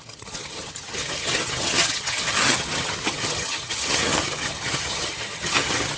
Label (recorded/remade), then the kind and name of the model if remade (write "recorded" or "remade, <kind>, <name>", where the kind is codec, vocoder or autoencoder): remade, vocoder, HiFi-GAN